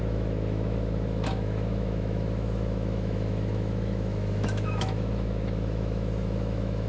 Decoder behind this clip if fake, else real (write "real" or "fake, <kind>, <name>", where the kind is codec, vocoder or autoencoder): fake, autoencoder, DAC-VAE